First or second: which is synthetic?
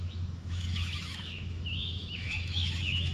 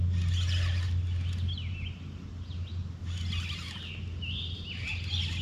first